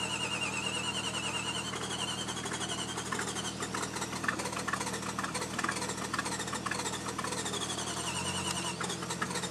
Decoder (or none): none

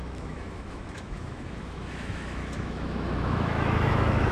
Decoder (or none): autoencoder, DAC-VAE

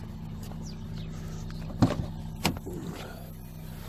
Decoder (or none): none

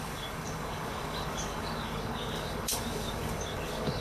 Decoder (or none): codec, DAC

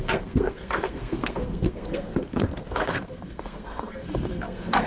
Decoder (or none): codec, SNAC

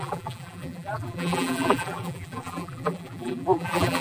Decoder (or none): vocoder, BigVGAN v2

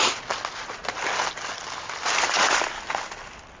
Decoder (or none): none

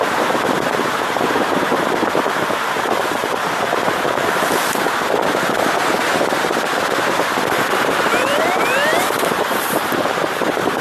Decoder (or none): vocoder, BigVGAN v2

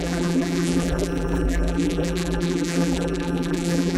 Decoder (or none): vocoder, BigVGAN v2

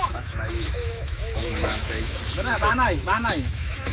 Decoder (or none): autoencoder, DAC-VAE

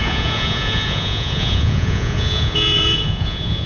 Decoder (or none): vocoder, Vocos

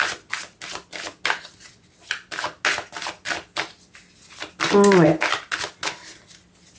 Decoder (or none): none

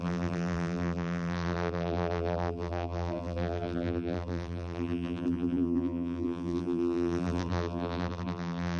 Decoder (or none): vocoder, BigVGAN v2